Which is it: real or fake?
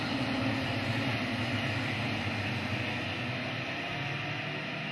real